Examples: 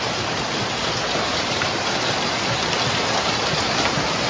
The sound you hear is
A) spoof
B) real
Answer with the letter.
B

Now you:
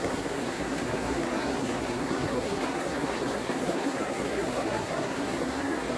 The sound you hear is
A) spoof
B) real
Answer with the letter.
A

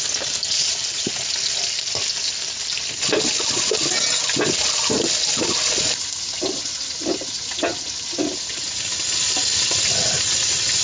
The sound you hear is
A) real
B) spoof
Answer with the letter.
A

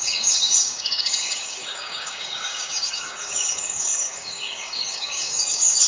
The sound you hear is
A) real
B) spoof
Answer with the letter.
B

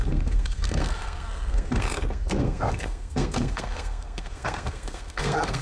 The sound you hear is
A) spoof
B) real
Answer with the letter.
A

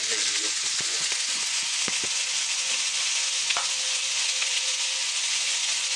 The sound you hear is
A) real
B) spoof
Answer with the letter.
B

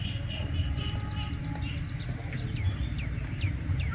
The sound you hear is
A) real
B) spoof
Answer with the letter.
A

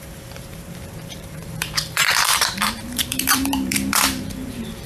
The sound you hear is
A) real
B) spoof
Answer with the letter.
B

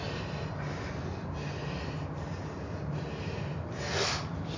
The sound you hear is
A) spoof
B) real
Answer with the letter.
B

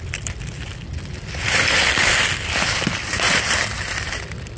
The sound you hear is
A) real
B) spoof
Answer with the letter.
A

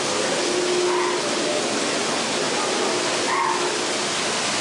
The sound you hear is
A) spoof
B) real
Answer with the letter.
B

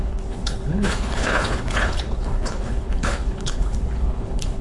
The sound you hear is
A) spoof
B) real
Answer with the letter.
A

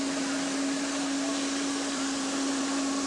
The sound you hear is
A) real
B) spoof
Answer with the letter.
A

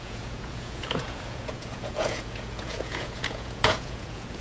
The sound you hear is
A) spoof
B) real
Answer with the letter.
A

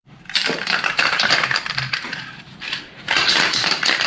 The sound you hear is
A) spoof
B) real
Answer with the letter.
A